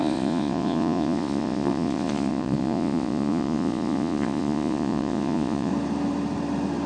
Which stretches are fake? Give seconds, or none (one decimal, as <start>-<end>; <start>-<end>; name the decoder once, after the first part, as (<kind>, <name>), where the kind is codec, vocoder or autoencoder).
0.0-5.7 (vocoder, Vocos)